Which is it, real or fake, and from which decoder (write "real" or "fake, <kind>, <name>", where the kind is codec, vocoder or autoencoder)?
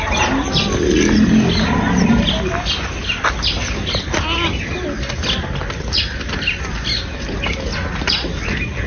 real